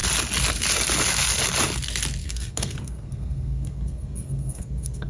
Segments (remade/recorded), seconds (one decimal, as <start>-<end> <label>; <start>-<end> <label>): 0.0-2.2 recorded; 2.2-5.1 remade